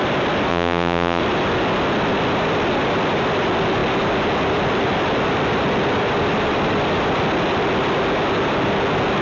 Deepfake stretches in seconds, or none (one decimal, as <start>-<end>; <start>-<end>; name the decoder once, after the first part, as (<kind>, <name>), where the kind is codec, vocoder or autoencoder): 0.5-1.2 (vocoder, BigVGAN v2)